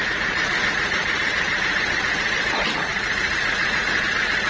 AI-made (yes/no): yes